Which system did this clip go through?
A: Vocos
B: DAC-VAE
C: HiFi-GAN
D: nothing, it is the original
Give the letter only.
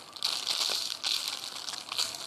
D